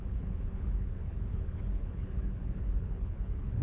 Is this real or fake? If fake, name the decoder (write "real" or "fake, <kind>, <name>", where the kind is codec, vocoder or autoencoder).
fake, codec, HILCodec